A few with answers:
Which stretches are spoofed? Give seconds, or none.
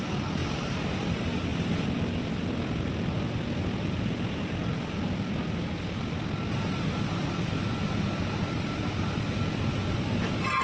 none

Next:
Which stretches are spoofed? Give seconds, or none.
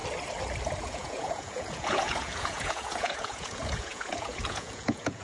0.8-5.2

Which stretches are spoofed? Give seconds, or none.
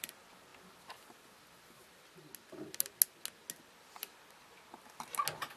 none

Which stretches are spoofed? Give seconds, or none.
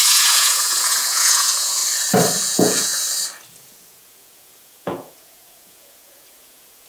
0.0-1.8; 2.4-2.9; 3.5-6.9